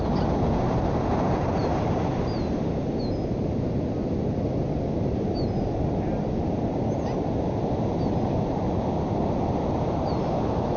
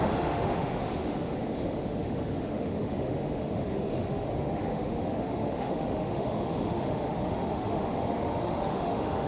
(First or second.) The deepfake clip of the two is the second